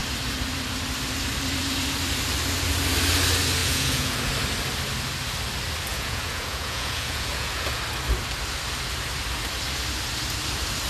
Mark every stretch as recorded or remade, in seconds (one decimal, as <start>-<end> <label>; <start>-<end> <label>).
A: 0.0-3.6 recorded; 3.6-4.3 remade; 4.3-5.9 recorded; 5.9-7.8 remade; 7.8-10.9 recorded